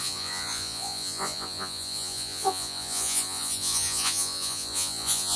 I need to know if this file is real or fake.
fake